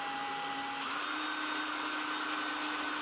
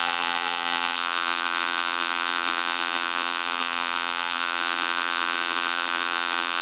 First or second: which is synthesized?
second